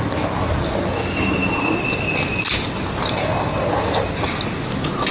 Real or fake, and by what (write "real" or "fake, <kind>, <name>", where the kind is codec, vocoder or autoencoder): real